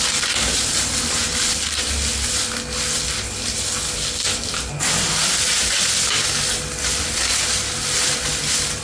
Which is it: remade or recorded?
recorded